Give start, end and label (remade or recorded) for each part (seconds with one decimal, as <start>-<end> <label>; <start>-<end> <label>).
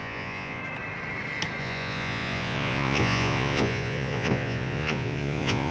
0.0-0.6 remade; 0.6-1.6 recorded; 1.6-5.7 remade